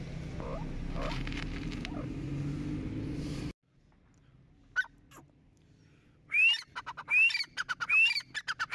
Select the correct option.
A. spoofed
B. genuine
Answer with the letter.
B